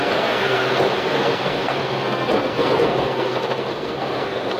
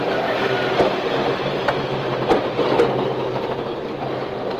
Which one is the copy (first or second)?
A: first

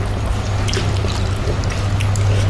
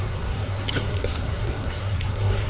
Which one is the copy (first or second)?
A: second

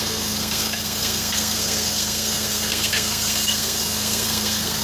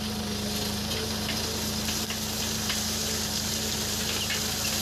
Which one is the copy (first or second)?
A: first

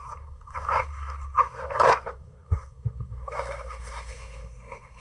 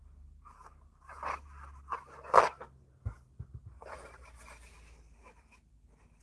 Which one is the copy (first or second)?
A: first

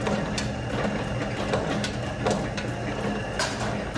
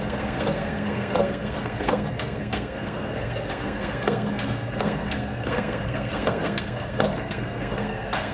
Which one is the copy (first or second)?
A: second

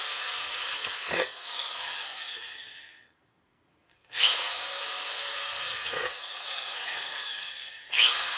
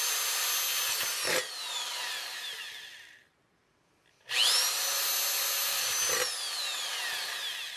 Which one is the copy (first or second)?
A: first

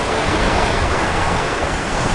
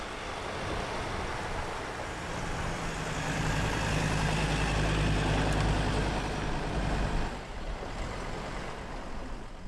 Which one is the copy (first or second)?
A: first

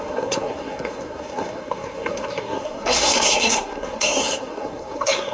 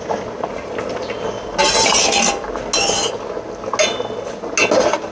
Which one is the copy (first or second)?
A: first